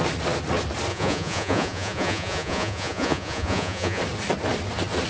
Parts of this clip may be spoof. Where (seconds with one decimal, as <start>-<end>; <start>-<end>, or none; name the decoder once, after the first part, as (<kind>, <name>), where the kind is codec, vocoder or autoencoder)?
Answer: 0.9-4.0 (vocoder, Vocos)